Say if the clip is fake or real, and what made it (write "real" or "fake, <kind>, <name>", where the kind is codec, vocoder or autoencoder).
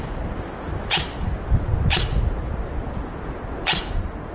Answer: real